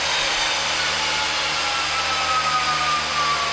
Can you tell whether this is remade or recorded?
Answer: recorded